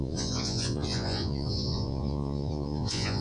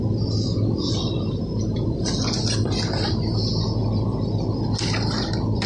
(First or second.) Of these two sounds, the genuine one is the second